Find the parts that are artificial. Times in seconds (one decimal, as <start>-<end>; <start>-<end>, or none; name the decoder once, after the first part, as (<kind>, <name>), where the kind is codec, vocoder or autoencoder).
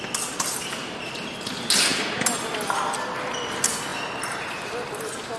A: none